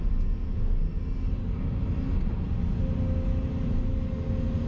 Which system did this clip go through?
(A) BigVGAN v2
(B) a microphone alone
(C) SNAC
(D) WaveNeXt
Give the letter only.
B